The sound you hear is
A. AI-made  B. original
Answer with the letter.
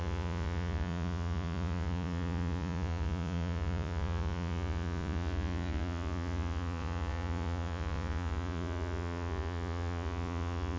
A